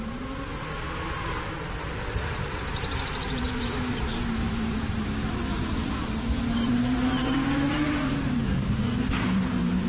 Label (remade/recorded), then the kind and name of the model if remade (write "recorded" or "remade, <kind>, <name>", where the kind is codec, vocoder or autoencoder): remade, vocoder, BigVGAN v2